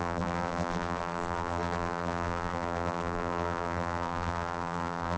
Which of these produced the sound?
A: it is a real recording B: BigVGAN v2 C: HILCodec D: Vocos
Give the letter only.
B